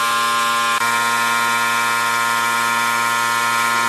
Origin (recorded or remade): recorded